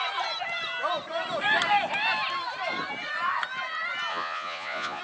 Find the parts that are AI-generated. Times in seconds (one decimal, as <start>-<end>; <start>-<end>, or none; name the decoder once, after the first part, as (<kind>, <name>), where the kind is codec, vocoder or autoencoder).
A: 4.1-5.0 (vocoder, Vocos)